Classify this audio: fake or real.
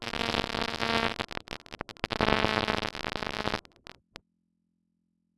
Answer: real